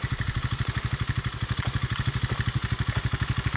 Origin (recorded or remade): recorded